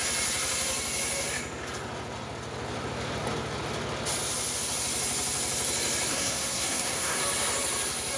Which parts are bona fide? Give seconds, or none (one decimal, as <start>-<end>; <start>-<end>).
0.0-6.1; 7.2-8.2